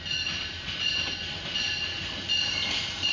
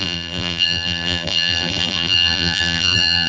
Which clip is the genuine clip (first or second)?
first